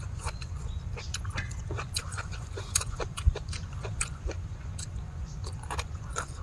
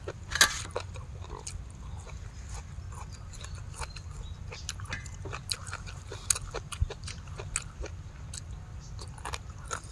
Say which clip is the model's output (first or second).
first